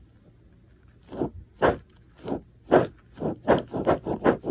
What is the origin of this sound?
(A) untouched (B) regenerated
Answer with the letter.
A